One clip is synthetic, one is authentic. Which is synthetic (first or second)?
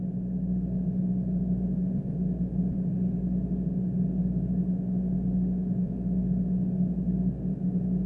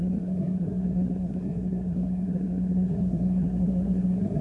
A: second